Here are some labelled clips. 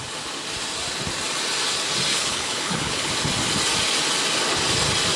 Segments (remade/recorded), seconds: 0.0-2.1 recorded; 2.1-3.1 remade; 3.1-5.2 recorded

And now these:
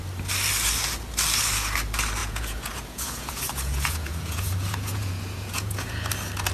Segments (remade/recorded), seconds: 0.0-2.2 recorded; 2.2-6.1 remade; 6.1-6.5 recorded

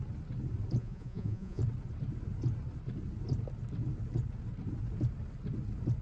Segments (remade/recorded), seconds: 0.0-0.8 recorded; 0.8-1.6 remade; 1.6-6.0 recorded

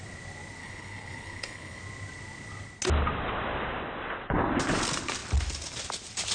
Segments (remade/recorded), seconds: 0.0-0.6 recorded; 0.6-1.8 remade; 1.8-6.3 recorded

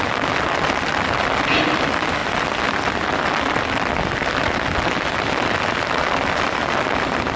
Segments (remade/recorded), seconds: 0.0-7.4 recorded

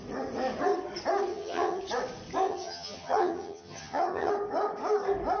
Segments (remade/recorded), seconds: 0.0-1.3 recorded; 1.3-1.8 remade; 1.8-2.5 recorded; 2.5-4.3 remade; 4.3-5.4 recorded